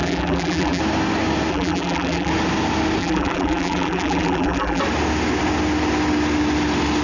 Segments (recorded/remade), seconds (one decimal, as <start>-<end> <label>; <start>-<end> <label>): 0.0-0.8 remade; 0.8-1.5 recorded; 1.5-2.3 remade; 2.3-3.0 recorded; 3.0-4.8 remade; 4.8-7.0 recorded